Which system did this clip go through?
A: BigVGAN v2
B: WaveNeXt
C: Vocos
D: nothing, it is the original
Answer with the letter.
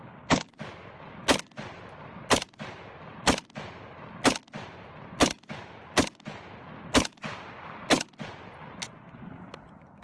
D